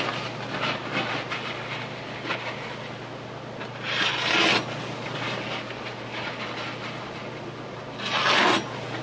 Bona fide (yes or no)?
yes